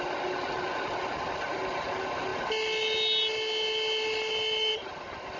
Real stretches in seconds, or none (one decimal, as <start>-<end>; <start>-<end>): 0.0-5.4